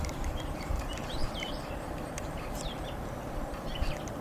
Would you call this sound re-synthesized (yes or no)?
yes